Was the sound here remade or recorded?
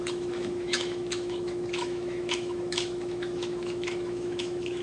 remade